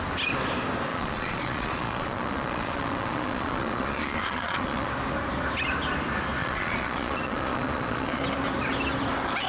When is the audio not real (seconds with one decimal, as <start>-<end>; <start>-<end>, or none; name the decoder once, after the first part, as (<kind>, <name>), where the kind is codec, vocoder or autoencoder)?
0.9-4.9 (vocoder, Vocos); 6.4-8.2